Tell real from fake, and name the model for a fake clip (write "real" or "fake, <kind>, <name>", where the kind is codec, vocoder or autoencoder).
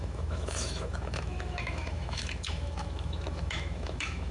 fake, autoencoder, DAC-VAE